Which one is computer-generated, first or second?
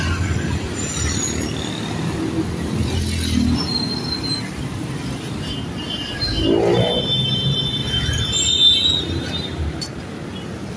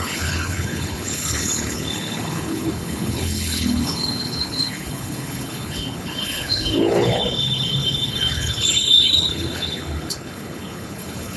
second